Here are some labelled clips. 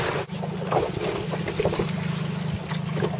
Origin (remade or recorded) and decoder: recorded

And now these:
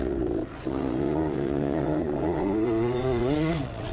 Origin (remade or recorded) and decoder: remade, vocoder, WaveNeXt